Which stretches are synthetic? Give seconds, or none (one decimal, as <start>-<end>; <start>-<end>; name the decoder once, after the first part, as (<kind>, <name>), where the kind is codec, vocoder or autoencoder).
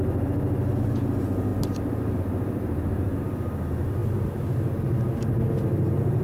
none